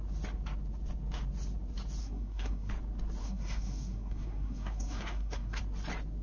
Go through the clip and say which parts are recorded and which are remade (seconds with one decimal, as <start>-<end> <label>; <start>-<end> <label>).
0.0-2.0 recorded; 2.0-2.7 remade; 2.7-3.2 recorded; 3.2-5.6 remade; 5.6-6.2 recorded